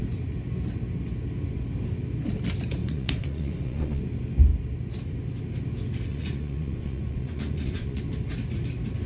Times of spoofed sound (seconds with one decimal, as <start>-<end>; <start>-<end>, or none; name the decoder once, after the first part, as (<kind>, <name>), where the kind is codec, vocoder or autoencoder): 2.8-4.0 (vocoder, Vocos); 6.1-8.0